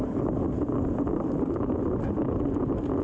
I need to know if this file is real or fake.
real